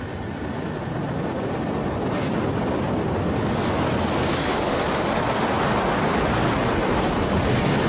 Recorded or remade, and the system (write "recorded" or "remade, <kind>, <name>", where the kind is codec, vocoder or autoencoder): recorded